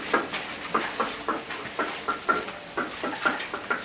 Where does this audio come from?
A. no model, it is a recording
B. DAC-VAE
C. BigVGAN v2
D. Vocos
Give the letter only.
A